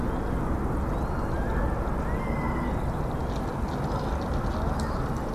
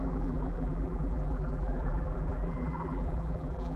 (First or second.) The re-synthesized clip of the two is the second